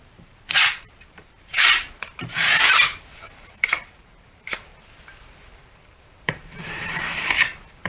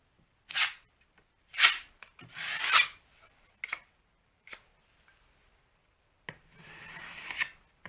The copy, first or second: first